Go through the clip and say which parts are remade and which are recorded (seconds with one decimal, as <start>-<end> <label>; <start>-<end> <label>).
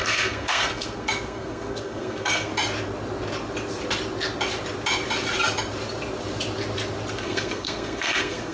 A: 0.0-2.5 remade; 2.5-7.2 recorded; 7.2-8.5 remade